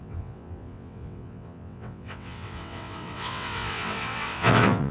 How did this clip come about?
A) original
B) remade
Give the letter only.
B